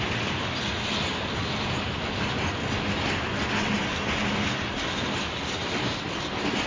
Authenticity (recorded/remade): recorded